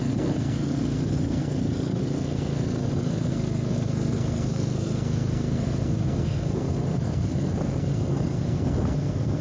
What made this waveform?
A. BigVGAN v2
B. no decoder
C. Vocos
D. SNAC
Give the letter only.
D